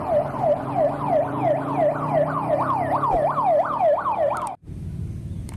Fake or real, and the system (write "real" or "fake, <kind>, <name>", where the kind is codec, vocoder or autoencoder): real